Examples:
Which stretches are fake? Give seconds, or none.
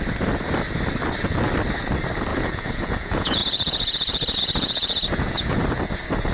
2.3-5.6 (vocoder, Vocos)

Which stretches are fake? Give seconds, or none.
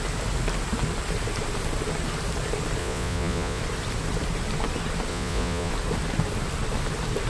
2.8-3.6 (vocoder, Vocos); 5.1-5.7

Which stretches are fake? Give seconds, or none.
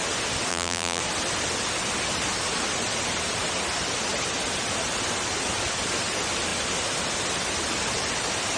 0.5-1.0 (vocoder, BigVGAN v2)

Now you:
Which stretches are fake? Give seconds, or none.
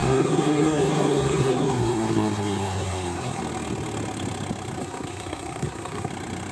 0.0-3.4 (codec, SNAC); 4.8-6.1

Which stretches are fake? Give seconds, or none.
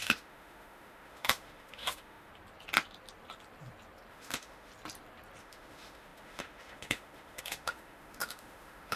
0.0-2.3 (autoencoder, DAC-VAE); 4.1-4.7; 5.4-9.0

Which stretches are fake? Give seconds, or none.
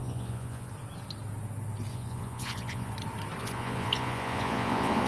0.0-0.7 (vocoder, Vocos); 1.9-2.9; 3.4-5.1